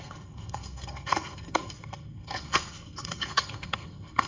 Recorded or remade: remade